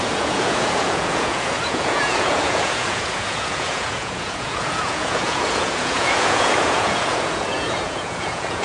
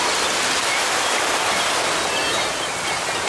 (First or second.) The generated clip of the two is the first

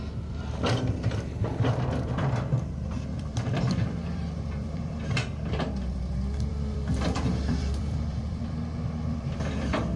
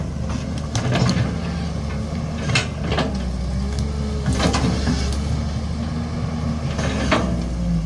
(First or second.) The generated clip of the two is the first